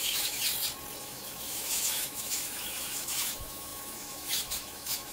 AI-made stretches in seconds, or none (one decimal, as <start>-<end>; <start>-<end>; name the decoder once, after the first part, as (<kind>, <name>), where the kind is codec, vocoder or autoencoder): 0.0-0.4 (autoencoder, DAC-VAE); 1.0-5.1